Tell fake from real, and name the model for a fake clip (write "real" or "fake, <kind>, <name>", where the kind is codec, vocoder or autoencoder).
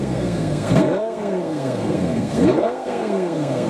fake, codec, SNAC